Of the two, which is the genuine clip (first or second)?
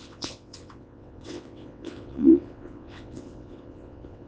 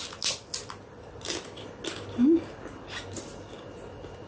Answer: second